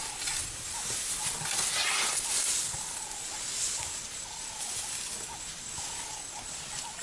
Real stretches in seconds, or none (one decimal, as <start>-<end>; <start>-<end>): 0.0-7.0